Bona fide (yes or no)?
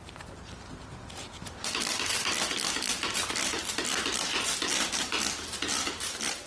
yes